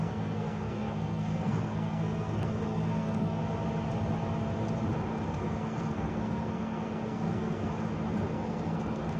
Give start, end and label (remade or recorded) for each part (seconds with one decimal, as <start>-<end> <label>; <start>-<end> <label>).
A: 0.0-3.4 remade; 3.4-5.3 recorded; 5.3-7.7 remade; 7.7-8.3 recorded; 8.3-9.2 remade

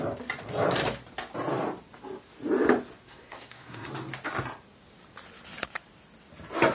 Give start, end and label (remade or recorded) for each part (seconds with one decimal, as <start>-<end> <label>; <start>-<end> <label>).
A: 0.0-3.0 recorded; 3.0-3.9 remade; 3.9-6.7 recorded

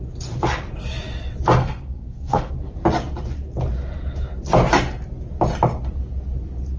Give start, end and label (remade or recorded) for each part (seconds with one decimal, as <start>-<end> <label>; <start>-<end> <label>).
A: 0.0-1.6 recorded; 1.6-2.5 remade; 2.5-6.8 recorded

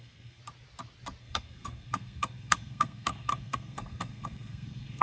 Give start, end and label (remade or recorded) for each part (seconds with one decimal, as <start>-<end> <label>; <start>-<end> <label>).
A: 0.0-0.4 remade; 0.4-1.2 recorded; 1.2-5.0 remade

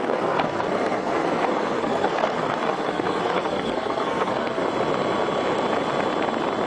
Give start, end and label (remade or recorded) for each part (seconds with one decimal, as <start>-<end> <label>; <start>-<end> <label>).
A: 0.0-4.6 remade; 4.6-6.7 recorded

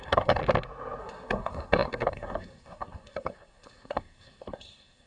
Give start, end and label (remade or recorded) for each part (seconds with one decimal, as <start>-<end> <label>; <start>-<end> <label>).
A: 0.0-0.4 remade; 0.4-1.0 recorded; 1.0-5.1 remade

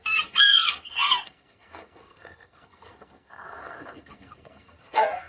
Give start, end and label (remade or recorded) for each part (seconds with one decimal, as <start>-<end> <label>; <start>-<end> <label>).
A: 0.0-5.3 remade

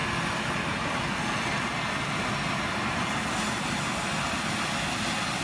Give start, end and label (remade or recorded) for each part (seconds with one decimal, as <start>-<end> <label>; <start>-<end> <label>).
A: 0.0-5.4 recorded